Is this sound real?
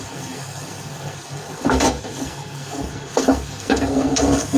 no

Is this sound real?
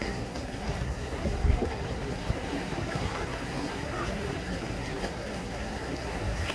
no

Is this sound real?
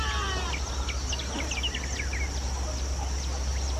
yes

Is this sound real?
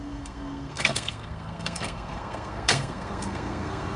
no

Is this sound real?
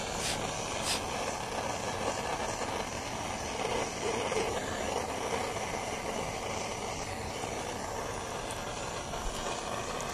yes